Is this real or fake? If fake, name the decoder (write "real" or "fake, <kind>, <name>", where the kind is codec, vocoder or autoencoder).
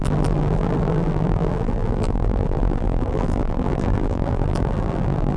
fake, vocoder, BigVGAN v2